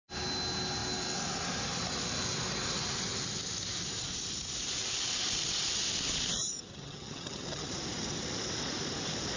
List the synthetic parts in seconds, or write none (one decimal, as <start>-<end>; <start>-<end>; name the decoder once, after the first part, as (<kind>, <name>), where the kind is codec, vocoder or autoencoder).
6.7-7.7 (vocoder, HiFi-GAN)